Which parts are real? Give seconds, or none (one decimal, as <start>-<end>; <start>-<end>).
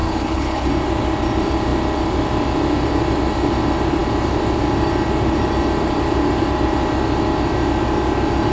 0.7-8.5